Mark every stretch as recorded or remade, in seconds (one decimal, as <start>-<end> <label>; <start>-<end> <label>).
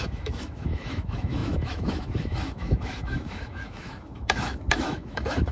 0.0-5.5 remade